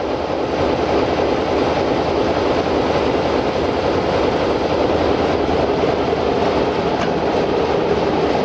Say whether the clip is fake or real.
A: real